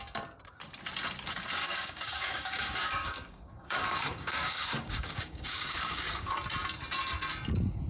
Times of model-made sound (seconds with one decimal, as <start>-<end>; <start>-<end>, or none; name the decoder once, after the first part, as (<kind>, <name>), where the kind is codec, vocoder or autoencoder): 1.6-6.3 (codec, DAC)